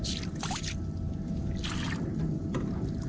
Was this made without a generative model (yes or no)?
yes